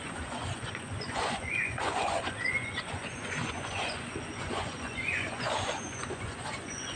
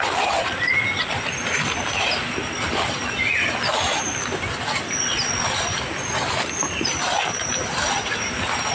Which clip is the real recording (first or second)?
second